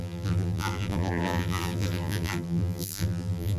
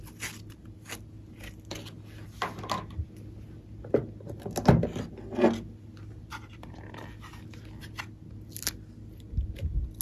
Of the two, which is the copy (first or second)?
first